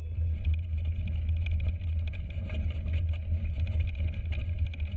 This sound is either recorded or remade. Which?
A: recorded